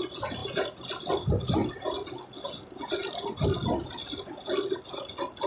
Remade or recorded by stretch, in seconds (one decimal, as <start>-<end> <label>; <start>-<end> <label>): 0.0-5.5 recorded